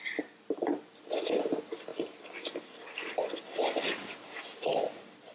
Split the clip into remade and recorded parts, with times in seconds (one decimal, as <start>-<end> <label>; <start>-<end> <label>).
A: 0.0-5.3 recorded